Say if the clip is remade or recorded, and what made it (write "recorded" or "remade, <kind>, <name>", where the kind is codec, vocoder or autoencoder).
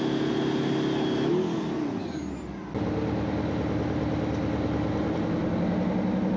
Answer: recorded